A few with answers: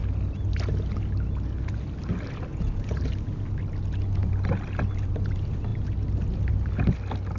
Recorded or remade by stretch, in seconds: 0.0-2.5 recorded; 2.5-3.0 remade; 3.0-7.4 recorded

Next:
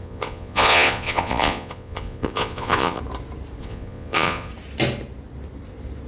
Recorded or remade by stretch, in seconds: 0.0-3.0 remade; 3.0-3.6 recorded; 3.6-4.5 remade; 4.5-6.1 recorded

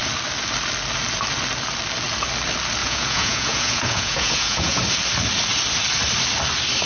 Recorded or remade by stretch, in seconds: 0.0-2.8 recorded; 2.8-4.8 remade; 4.8-6.9 recorded

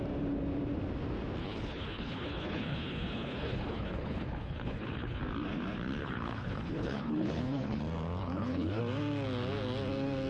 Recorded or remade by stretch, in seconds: 0.0-1.4 recorded; 1.4-5.2 remade; 5.2-6.0 recorded; 6.0-7.8 remade; 7.8-8.2 recorded; 8.2-8.8 remade; 8.8-10.3 recorded